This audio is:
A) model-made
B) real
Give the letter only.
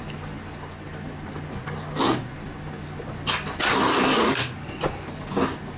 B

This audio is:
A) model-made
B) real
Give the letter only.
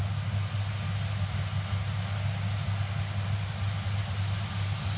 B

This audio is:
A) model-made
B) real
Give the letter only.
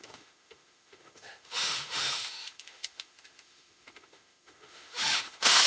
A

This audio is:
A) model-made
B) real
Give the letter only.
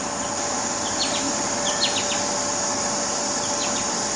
B